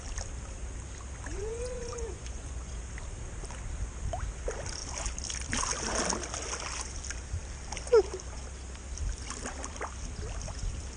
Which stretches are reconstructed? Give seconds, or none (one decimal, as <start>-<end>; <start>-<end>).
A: 1.3-2.7